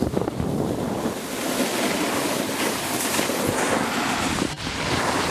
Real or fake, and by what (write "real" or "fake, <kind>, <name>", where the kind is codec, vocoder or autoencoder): real